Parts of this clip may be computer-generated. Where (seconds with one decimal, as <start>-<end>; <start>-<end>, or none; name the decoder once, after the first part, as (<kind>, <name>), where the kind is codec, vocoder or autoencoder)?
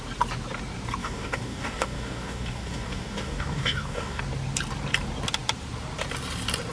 1.0-4.2 (codec, DAC)